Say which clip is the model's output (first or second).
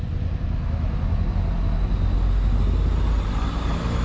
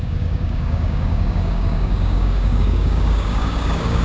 second